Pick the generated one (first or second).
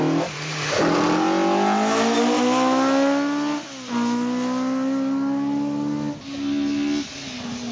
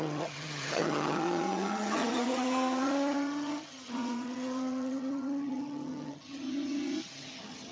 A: second